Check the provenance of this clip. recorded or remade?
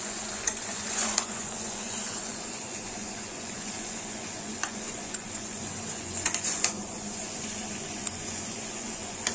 remade